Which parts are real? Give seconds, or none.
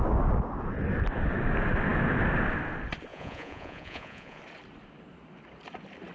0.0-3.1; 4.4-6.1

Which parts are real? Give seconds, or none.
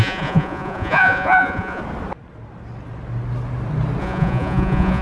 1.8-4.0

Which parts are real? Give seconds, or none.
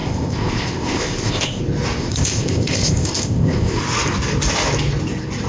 1.6-2.0; 3.8-5.5